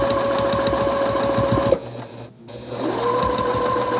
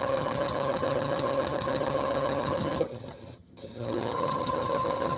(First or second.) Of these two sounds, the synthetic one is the second